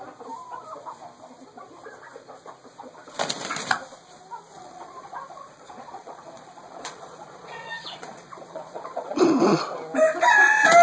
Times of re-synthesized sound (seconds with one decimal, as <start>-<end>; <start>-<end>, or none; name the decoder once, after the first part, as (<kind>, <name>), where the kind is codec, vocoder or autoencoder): 4.5-9.2 (vocoder, Vocos)